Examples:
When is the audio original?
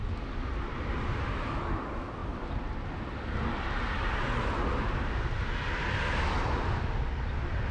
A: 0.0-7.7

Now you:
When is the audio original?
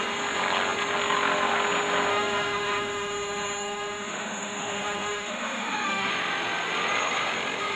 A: 0.0-2.1; 6.1-7.8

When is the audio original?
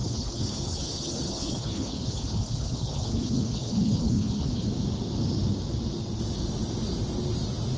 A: 4.7-7.8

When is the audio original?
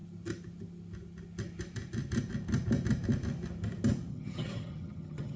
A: 0.0-4.1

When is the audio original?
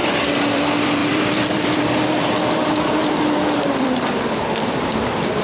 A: 0.0-0.5